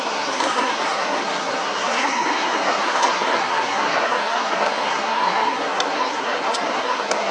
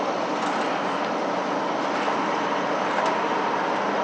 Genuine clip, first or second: second